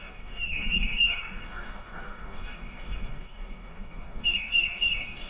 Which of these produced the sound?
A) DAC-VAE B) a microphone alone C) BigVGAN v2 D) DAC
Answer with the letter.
D